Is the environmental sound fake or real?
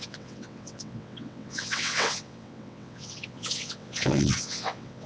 fake